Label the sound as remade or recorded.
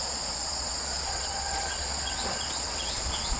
remade